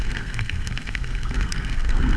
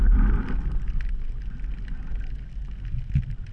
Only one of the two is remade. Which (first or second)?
first